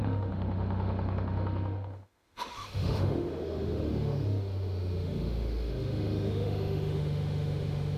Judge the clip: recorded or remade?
remade